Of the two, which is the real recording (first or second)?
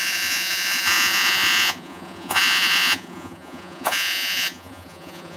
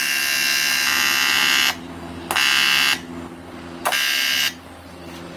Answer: second